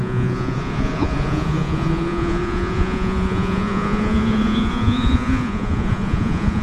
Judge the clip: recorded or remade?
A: remade